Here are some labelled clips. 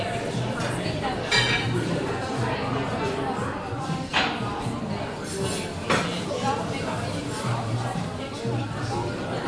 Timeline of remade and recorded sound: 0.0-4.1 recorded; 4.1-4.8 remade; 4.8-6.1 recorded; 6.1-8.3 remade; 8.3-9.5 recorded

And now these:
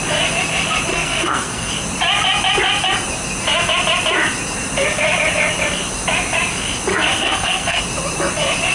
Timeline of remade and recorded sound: 0.0-0.9 recorded; 0.9-1.7 remade; 1.7-6.9 recorded; 6.9-7.8 remade; 7.8-8.7 recorded